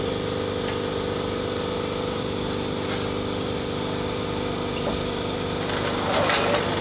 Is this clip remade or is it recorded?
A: remade